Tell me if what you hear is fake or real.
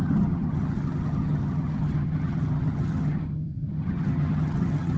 fake